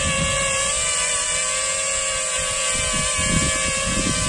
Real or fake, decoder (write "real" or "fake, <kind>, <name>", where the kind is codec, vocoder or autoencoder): real